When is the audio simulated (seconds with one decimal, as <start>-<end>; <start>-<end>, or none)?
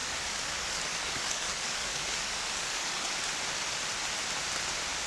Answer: 0.0-3.1